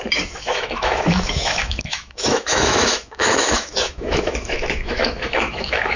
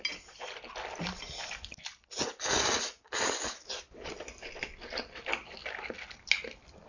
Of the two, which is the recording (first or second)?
second